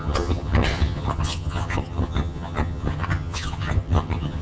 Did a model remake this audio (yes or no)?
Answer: yes